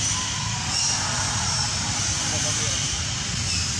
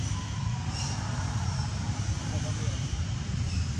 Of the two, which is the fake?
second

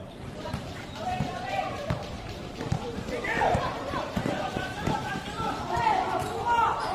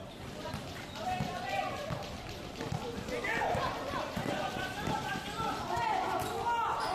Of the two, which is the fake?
first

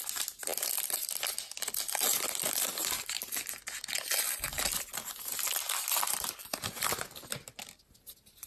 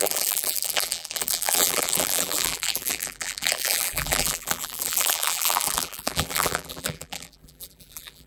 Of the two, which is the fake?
second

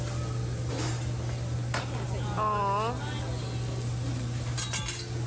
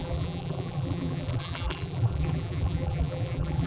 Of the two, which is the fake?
second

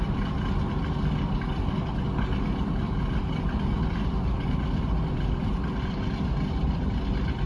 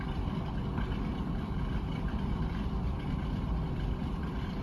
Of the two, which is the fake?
second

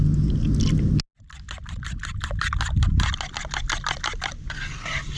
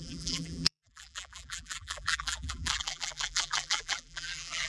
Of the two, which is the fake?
second